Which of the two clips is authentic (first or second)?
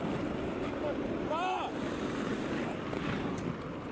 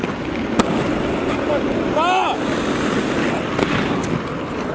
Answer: second